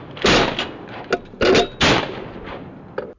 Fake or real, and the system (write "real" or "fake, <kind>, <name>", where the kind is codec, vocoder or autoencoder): real